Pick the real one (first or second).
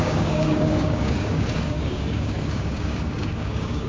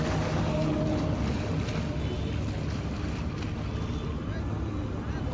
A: second